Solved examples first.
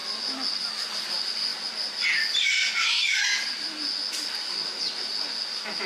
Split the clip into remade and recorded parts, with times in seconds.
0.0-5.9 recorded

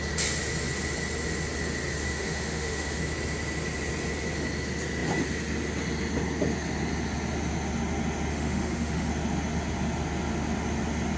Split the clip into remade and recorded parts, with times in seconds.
0.0-2.0 recorded; 2.0-3.0 remade; 3.0-8.3 recorded; 8.3-9.1 remade; 9.1-11.2 recorded